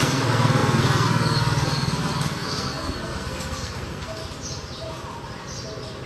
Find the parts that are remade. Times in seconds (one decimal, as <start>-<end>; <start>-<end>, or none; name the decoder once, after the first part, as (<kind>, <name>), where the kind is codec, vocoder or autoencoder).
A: 0.0-4.2 (codec, SNAC)